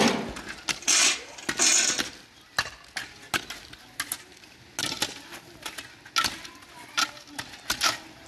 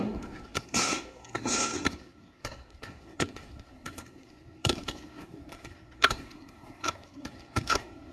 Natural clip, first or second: first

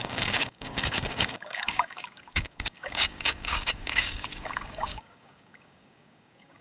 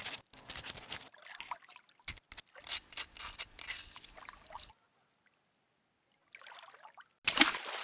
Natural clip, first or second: second